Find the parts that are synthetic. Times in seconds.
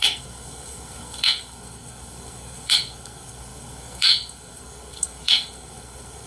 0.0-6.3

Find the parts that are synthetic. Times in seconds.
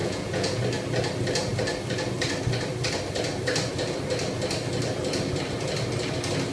0.0-0.6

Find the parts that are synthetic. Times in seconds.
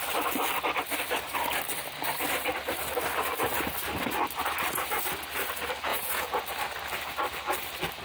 5.9-6.4